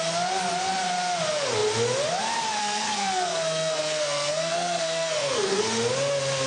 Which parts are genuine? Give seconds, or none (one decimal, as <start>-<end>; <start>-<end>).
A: 0.0-2.6; 5.6-6.5